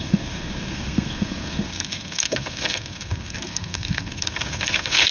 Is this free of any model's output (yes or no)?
no